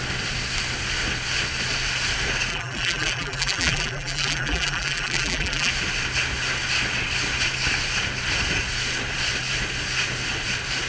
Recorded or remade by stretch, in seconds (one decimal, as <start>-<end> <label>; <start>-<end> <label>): 0.0-2.5 recorded; 2.5-5.7 remade; 5.7-10.9 recorded